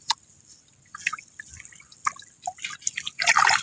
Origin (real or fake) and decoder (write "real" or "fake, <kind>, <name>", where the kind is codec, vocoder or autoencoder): real